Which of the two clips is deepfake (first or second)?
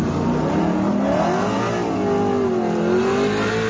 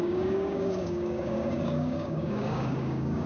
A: second